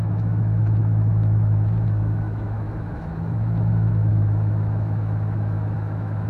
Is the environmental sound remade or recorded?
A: remade